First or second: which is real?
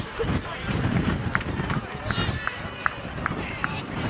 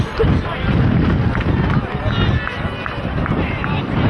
second